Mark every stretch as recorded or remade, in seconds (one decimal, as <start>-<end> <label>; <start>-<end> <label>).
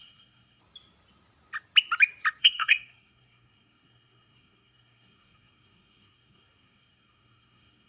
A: 0.0-0.6 remade; 0.6-2.4 recorded; 2.4-7.9 remade